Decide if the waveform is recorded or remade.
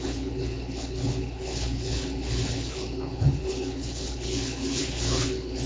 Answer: remade